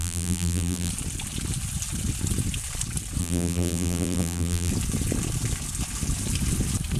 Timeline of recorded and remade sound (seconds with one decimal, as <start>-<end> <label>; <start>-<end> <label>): 0.0-0.9 remade; 0.9-3.2 recorded; 3.2-4.7 remade; 4.7-7.0 recorded